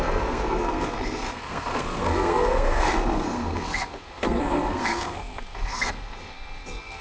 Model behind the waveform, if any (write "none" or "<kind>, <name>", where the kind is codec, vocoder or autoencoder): codec, SNAC